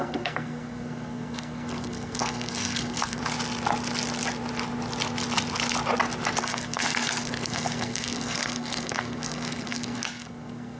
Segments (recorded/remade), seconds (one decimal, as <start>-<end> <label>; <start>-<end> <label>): 0.0-3.2 remade; 3.2-6.4 recorded; 6.4-10.8 remade